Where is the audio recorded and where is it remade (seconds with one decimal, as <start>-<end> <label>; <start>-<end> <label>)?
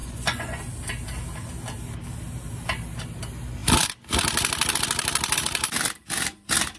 0.0-0.6 remade; 0.6-6.8 recorded